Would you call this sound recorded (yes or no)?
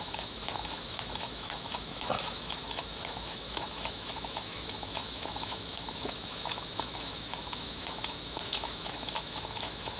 no